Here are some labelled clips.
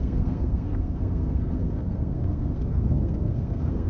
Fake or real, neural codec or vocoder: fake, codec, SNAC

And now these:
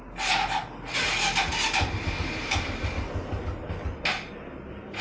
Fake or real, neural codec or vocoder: real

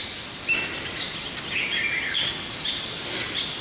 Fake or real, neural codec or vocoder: real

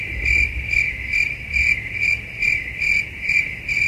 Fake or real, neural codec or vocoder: real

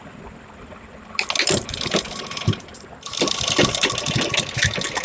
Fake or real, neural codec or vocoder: real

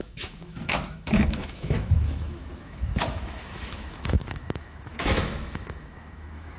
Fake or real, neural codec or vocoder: fake, autoencoder, DAC-VAE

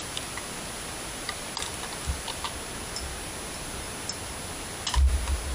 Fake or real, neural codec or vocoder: real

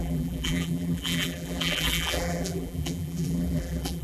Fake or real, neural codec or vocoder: fake, vocoder, BigVGAN v2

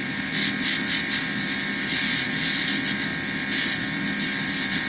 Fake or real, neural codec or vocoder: real